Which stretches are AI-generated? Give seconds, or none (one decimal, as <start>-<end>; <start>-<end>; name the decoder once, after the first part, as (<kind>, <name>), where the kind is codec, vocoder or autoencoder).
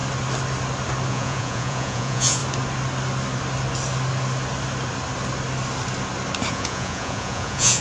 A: 1.1-2.4 (vocoder, Vocos); 6.5-7.8